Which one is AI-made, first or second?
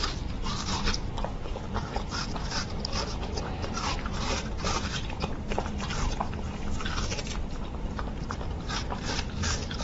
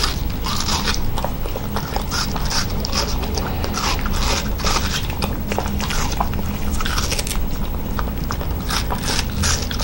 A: first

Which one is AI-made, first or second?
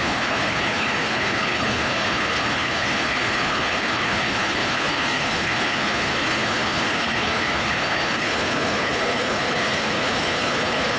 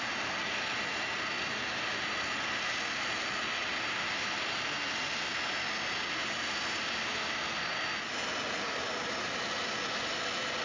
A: first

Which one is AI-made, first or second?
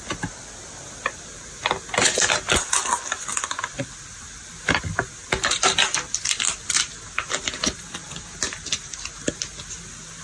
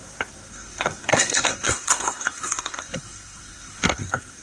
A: second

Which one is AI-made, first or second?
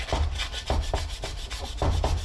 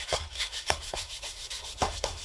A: second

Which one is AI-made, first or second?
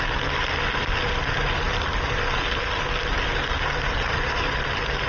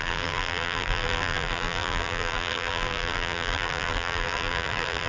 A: second